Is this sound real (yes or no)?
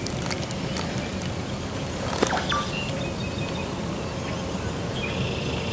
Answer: yes